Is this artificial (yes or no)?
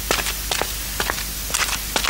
no